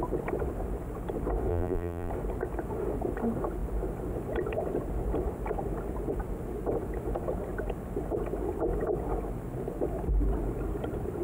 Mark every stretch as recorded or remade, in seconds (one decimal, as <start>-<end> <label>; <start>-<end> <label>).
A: 0.0-1.5 recorded; 1.5-2.1 remade; 2.1-11.2 recorded